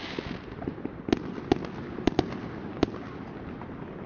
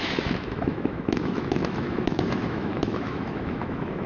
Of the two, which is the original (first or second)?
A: first